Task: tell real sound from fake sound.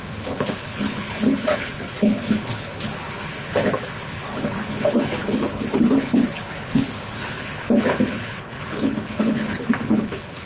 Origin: fake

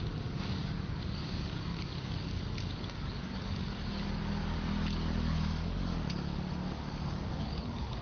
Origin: fake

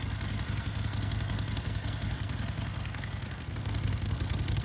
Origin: fake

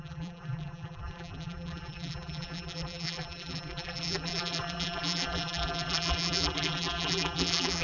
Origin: fake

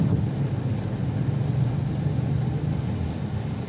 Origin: real